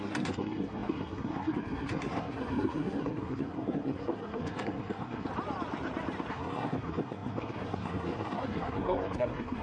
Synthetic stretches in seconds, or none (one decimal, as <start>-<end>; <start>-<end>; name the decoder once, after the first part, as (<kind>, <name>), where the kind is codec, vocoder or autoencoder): 0.0-5.3 (codec, SNAC); 6.3-9.6